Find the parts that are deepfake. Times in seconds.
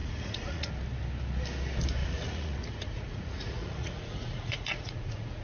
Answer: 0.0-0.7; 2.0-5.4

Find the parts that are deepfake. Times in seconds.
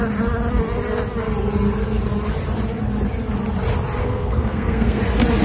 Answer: 4.0-5.0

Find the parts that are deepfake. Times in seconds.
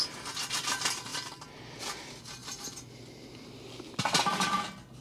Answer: 1.1-1.8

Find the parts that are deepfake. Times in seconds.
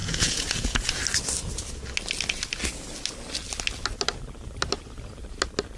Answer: 0.0-0.9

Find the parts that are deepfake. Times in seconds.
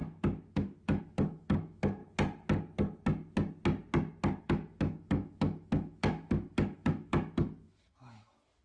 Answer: 0.0-2.0; 4.4-8.6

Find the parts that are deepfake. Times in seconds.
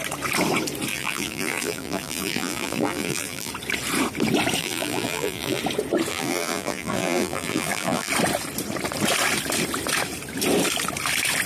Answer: 0.9-3.5; 4.6-5.6; 6.1-8.1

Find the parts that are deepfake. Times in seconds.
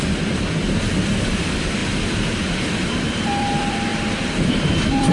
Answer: 0.0-5.1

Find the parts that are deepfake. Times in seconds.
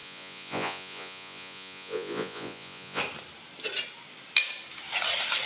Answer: 0.0-3.0